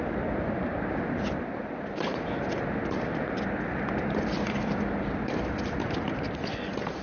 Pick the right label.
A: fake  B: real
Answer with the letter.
A